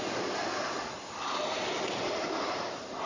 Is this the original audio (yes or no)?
yes